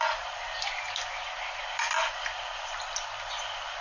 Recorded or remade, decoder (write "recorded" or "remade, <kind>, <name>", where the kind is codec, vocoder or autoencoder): remade, vocoder, BigVGAN v2